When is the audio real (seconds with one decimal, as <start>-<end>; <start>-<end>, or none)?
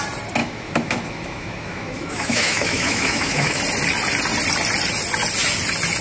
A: 0.0-0.4; 3.6-6.0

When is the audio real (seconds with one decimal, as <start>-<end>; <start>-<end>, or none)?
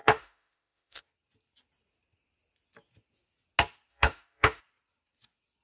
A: 1.0-3.9; 4.6-5.6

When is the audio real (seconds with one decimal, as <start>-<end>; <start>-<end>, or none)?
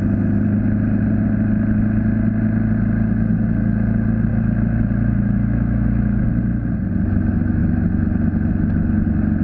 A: 0.0-4.3; 6.2-9.4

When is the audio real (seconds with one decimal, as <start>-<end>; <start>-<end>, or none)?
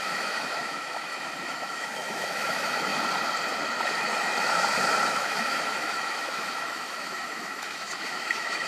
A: 2.9-5.1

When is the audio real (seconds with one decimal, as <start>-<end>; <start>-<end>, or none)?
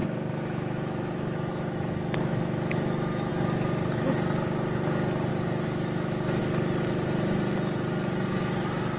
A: 3.3-5.3; 6.4-9.0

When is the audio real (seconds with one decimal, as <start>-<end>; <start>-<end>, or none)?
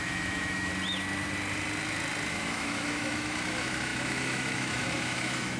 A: 0.7-2.3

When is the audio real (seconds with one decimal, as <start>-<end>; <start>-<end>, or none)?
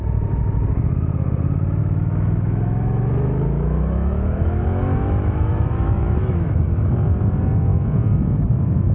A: 0.0-1.8; 6.9-8.9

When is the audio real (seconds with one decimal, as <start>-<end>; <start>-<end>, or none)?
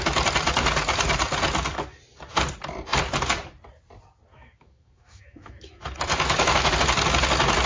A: 0.0-4.3; 6.7-7.7